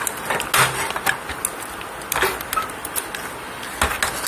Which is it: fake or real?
real